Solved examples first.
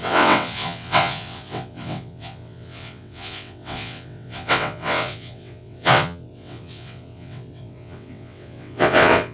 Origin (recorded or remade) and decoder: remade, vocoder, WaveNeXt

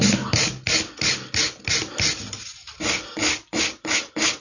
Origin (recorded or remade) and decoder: recorded